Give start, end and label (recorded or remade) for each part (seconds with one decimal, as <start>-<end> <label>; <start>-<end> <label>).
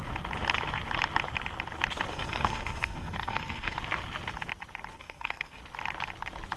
0.0-2.1 recorded; 2.1-3.8 remade; 3.8-4.9 recorded; 4.9-5.6 remade; 5.6-6.6 recorded